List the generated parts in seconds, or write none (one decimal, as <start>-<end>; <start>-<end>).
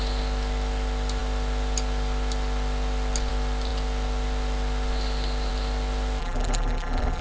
6.2-7.2